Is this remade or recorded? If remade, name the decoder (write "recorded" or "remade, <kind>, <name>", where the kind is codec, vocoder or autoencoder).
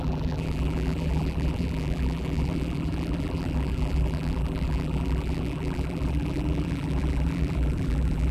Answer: remade, vocoder, BigVGAN v2